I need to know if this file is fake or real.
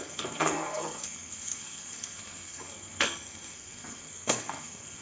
fake